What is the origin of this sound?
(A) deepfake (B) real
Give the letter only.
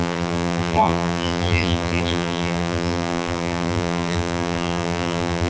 A